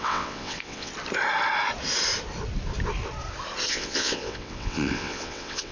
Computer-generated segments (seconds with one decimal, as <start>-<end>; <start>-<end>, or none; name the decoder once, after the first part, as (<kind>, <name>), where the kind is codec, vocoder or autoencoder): 0.0-0.9 (vocoder, WaveNeXt); 3.7-5.7